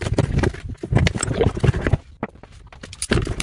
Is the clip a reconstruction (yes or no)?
yes